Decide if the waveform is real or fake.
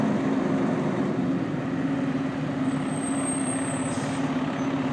real